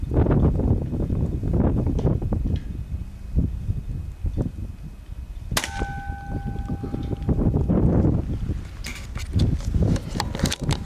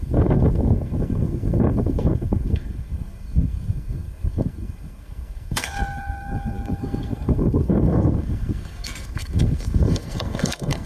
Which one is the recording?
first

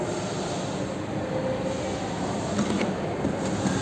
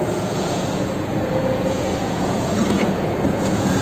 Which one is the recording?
first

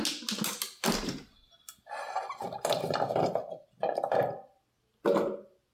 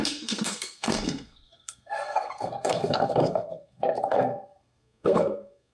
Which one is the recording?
first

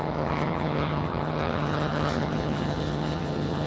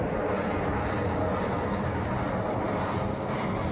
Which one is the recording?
second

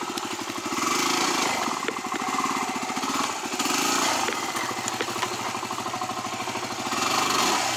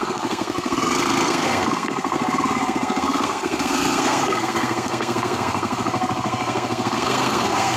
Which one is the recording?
first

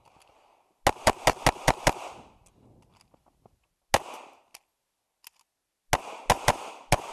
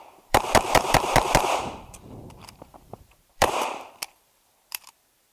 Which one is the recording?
first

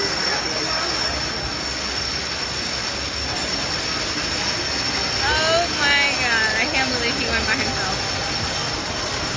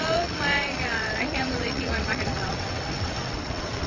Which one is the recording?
first